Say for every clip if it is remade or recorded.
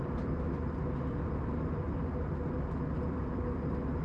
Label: recorded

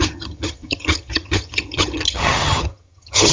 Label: remade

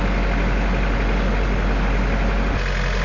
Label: recorded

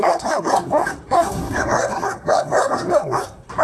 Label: remade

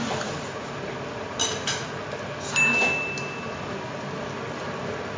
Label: recorded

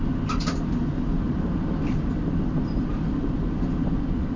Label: recorded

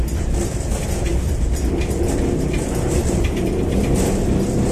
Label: recorded